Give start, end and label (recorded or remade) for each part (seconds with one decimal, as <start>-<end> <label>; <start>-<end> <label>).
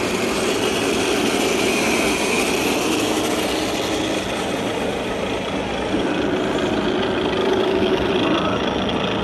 0.0-7.4 recorded; 7.4-8.1 remade; 8.1-9.2 recorded